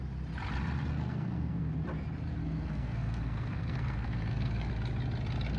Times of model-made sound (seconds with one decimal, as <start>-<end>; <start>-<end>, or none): 0.9-1.7; 2.4-4.7